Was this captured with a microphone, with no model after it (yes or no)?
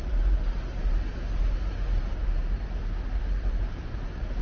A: no